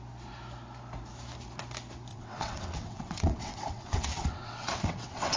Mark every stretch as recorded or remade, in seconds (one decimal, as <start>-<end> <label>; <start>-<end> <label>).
0.0-2.1 recorded; 2.1-5.4 remade